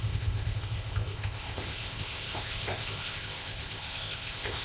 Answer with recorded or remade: remade